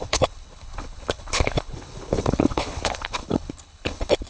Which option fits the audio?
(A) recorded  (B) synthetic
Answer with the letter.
B